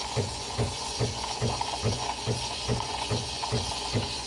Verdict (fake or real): fake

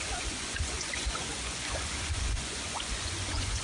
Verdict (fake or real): fake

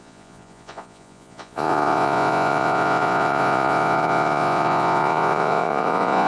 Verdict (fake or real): fake